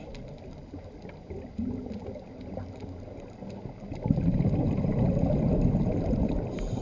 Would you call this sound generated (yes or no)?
no